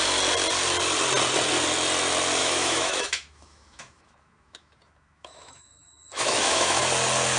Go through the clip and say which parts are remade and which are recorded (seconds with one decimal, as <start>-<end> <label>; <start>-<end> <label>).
0.0-2.4 recorded; 2.4-6.8 remade; 6.8-7.4 recorded

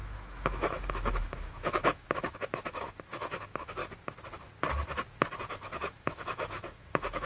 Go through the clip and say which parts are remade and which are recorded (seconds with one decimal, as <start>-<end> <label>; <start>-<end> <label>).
0.0-3.8 remade; 3.8-5.5 recorded; 5.5-7.3 remade

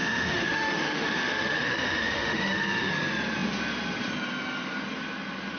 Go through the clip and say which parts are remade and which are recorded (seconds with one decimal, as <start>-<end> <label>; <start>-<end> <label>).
0.0-2.9 remade; 2.9-5.6 recorded

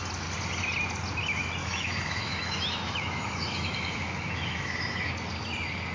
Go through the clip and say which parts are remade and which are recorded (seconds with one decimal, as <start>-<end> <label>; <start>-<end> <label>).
0.0-1.6 recorded; 1.6-5.1 remade; 5.1-5.9 recorded

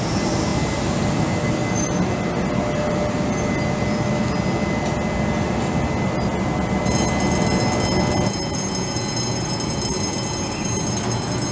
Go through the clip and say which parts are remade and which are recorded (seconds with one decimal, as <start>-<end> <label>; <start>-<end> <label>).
0.0-11.5 recorded

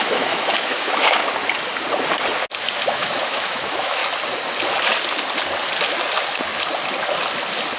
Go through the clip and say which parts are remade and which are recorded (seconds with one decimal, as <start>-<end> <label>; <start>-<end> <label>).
0.0-1.2 remade; 1.2-2.9 recorded; 2.9-4.0 remade; 4.0-7.8 recorded